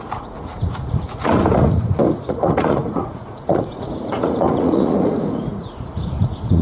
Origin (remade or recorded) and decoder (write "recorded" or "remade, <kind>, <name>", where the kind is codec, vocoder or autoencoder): remade, vocoder, Vocos